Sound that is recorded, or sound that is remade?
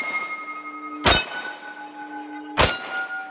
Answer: recorded